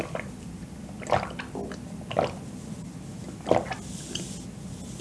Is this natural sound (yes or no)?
yes